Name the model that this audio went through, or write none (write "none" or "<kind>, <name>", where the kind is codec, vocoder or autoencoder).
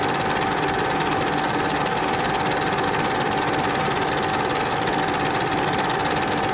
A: none